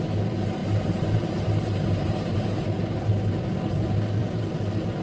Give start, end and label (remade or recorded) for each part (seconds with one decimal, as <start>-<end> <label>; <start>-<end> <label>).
0.0-0.6 recorded; 0.6-3.3 remade; 3.3-4.2 recorded; 4.2-5.0 remade